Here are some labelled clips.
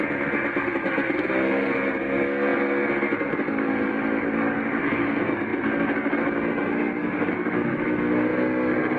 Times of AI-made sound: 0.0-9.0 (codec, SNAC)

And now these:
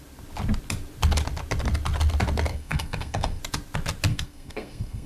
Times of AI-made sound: 2.5-3.4 (codec, SNAC); 4.1-5.1

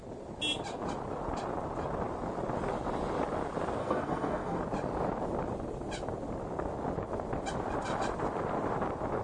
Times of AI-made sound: 3.8-4.6 (codec, SNAC)

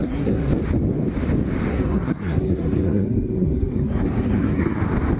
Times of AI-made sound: 0.0-0.5 (codec, SNAC); 1.7-4.8